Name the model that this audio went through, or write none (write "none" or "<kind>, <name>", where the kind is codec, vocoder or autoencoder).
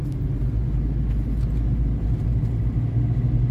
none